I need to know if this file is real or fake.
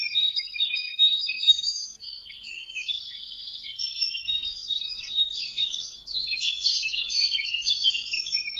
fake